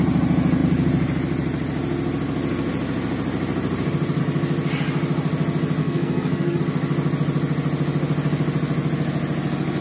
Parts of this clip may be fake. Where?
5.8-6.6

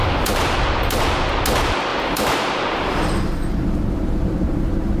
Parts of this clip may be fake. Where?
0.0-1.0; 1.9-5.0

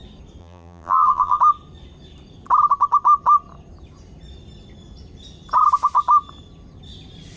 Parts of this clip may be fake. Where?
0.4-1.4

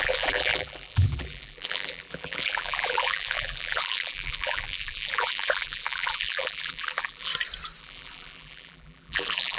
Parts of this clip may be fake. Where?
0.0-7.3; 7.8-9.6

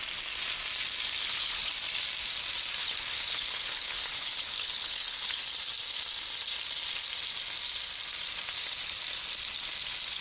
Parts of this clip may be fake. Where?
1.2-1.7; 2.8-5.4

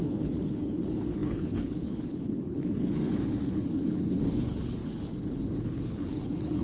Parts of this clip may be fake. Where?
0.0-6.6

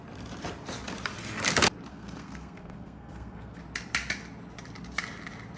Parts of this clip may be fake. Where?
1.9-3.6